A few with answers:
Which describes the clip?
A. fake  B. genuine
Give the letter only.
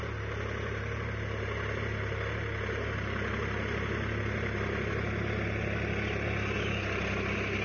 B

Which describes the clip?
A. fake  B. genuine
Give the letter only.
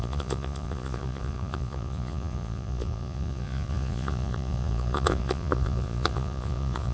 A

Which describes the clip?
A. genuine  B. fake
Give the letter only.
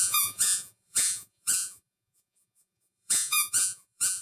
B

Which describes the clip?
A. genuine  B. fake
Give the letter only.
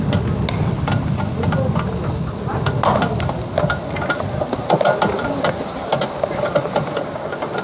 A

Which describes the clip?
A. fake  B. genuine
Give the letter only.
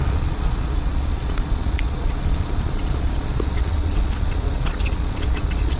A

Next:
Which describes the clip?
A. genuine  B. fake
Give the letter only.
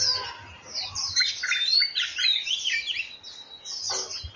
A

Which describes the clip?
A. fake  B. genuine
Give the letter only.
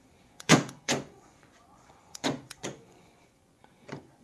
A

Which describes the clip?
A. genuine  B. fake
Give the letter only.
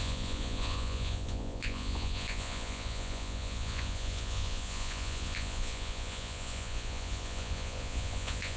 B